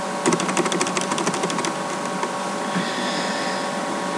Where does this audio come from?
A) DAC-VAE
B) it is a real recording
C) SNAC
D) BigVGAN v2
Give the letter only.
B